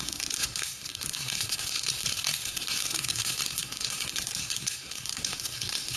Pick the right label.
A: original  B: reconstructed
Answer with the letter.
B